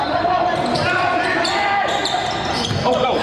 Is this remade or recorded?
remade